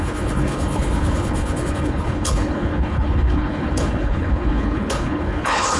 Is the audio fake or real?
fake